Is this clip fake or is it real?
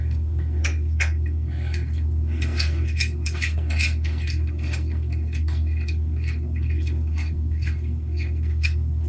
fake